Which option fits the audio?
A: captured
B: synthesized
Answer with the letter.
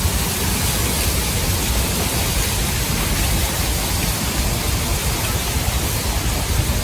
A